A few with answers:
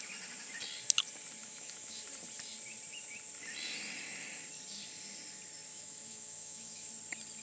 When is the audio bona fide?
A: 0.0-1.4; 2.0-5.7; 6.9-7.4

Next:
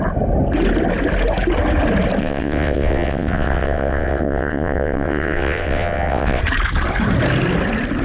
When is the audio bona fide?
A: 0.0-2.2; 6.4-8.0